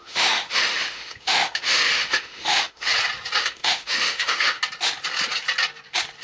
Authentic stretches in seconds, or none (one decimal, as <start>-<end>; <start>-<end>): 2.9-3.4; 4.6-6.2

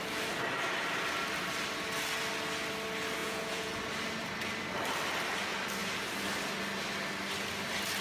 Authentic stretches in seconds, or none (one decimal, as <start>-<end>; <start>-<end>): 0.0-3.2; 3.8-8.0

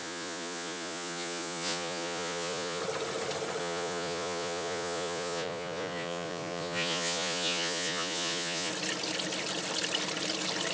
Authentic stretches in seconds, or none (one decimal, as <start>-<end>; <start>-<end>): 2.8-3.6; 8.7-10.7

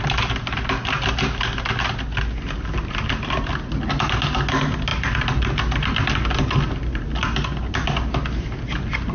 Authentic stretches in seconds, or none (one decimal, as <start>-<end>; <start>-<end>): 0.0-9.1

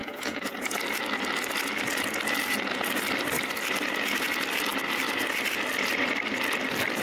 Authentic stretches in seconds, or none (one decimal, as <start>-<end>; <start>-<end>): 0.8-7.0

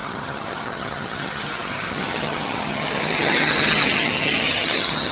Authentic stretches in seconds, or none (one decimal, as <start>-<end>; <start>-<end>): none

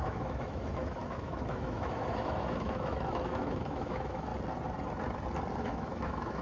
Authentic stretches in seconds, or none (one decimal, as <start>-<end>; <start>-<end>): 4.3-5.6

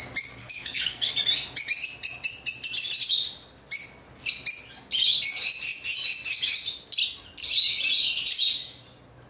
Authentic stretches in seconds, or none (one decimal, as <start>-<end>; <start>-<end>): 0.0-0.4; 1.1-9.3